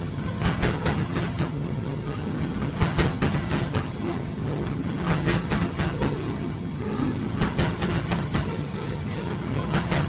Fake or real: fake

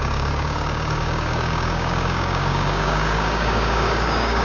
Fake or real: fake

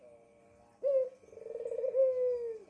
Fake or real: real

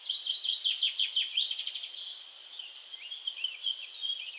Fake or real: real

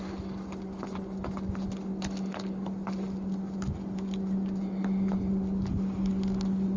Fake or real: real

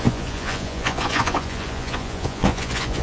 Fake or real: fake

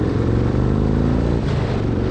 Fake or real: fake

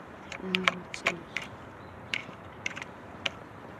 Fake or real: fake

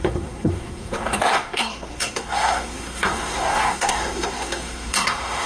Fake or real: fake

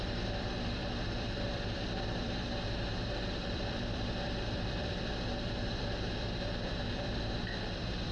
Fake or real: fake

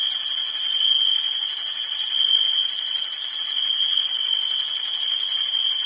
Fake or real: real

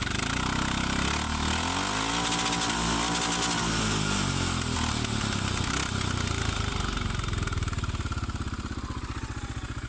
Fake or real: real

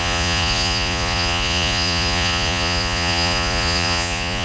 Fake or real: fake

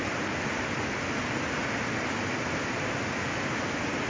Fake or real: real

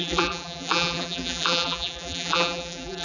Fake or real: fake